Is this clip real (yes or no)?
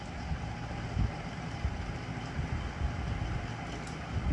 yes